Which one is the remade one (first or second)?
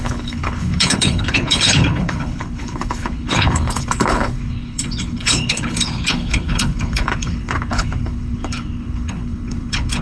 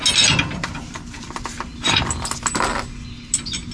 first